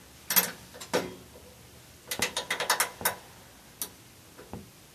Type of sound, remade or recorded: recorded